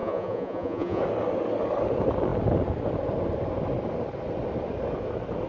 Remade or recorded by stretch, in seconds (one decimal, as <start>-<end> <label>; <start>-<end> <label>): 0.0-1.0 remade; 1.0-5.5 recorded

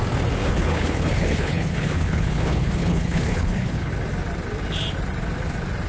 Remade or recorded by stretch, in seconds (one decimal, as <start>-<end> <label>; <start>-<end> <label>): 0.0-0.4 recorded; 0.4-3.9 remade; 3.9-5.9 recorded